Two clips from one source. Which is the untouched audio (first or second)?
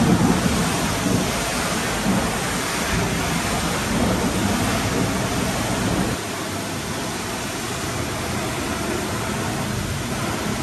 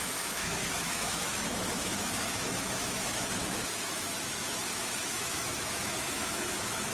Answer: first